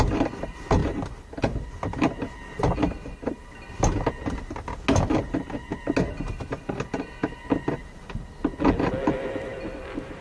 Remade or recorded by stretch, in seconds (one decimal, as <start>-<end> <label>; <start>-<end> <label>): 0.0-10.2 recorded